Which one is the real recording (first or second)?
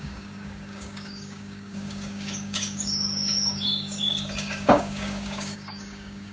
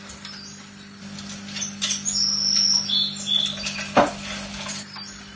second